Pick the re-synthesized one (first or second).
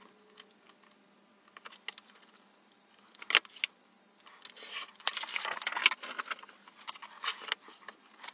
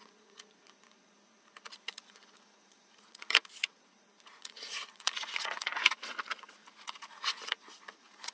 second